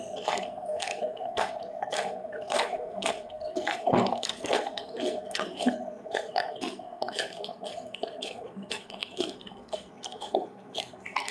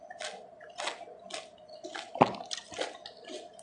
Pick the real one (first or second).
second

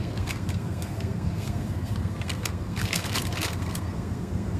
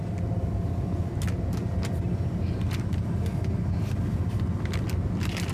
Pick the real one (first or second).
second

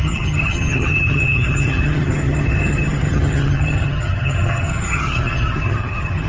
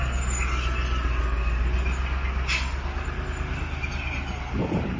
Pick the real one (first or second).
second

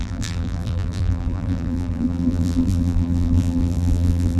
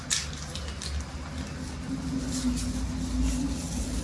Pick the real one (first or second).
second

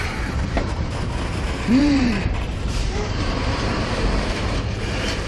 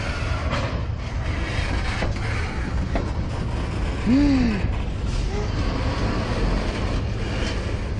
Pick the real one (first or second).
second